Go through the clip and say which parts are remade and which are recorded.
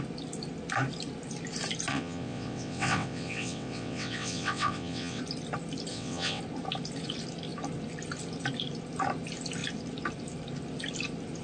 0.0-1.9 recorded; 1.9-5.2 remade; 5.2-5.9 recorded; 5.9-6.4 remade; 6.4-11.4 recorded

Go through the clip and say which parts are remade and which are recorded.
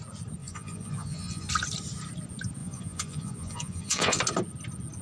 0.0-0.4 recorded; 0.4-1.5 remade; 1.5-2.6 recorded; 2.6-4.2 remade; 4.2-5.0 recorded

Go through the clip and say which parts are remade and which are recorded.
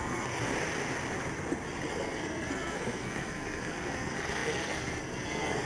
0.0-0.5 remade; 0.5-1.9 recorded; 1.9-5.7 remade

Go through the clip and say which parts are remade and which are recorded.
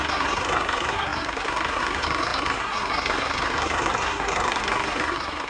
0.0-5.5 remade